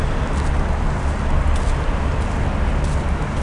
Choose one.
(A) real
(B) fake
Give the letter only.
A